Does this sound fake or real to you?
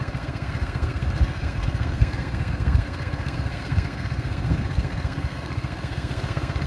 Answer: fake